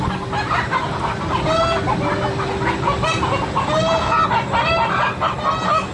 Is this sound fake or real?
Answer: real